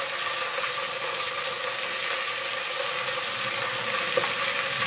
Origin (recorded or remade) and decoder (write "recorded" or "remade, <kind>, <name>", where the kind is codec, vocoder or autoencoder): recorded